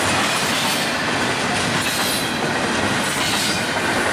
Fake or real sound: real